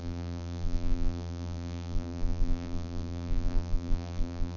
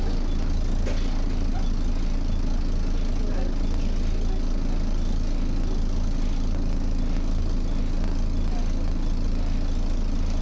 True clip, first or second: second